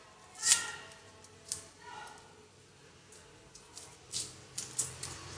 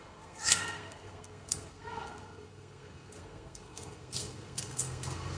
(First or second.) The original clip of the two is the first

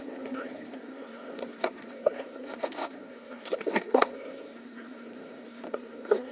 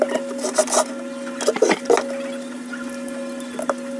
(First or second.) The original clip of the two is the second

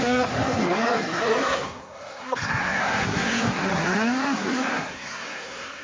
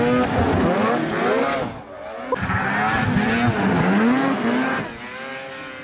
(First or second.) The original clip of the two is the second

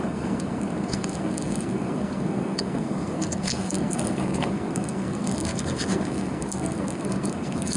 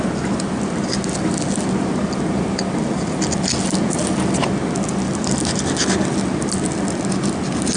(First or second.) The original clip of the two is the second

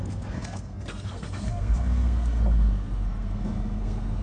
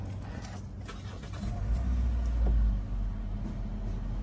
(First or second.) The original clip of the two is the second